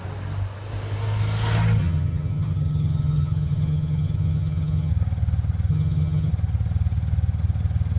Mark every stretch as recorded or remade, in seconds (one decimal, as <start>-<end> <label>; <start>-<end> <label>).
0.0-1.8 recorded; 1.8-4.9 remade; 4.9-5.7 recorded; 5.7-6.3 remade; 6.3-8.0 recorded